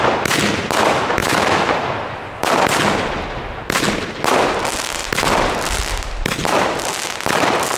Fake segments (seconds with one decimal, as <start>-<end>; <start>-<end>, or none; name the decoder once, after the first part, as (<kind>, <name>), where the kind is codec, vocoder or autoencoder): 1.2-1.7 (autoencoder, DAC-VAE)